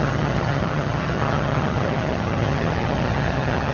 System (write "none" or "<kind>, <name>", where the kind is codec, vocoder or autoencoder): vocoder, HiFi-GAN